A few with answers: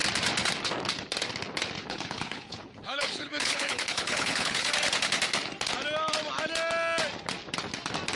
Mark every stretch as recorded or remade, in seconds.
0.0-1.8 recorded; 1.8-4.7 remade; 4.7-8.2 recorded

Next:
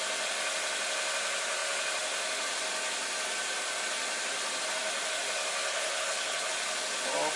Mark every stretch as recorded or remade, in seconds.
0.0-5.7 recorded; 5.7-6.5 remade; 6.5-7.4 recorded